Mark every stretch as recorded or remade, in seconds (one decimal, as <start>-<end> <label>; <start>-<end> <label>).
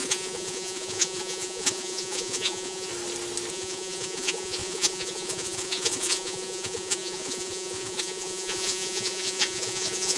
0.0-2.9 remade; 2.9-3.5 recorded; 3.5-10.2 remade